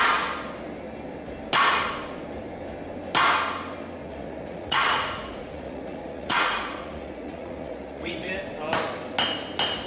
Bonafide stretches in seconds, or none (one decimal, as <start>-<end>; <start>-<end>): 0.0-4.0; 8.3-9.9

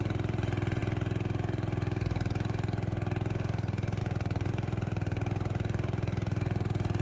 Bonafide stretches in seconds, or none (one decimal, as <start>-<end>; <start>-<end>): 0.8-4.0

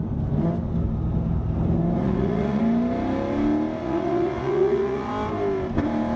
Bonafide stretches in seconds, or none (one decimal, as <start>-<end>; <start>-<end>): 0.0-2.0; 2.6-3.8; 5.1-6.2

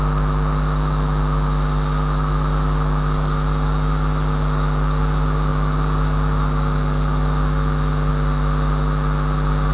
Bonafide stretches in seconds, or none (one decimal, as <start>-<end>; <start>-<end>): 0.0-9.7

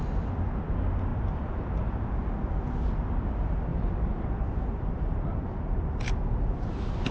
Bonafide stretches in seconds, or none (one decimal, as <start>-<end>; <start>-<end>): 0.0-1.1; 2.2-3.7

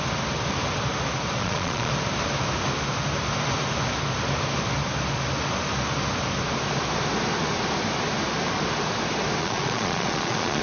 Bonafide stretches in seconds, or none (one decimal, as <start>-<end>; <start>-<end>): 0.0-1.4; 1.9-9.4

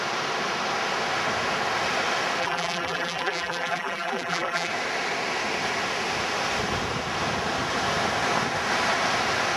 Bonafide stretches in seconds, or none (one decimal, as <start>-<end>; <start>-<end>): 0.0-2.4; 4.7-9.6

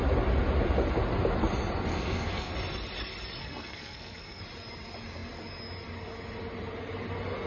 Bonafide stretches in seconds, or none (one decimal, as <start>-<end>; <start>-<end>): 0.0-1.9; 2.5-3.4; 4.4-7.5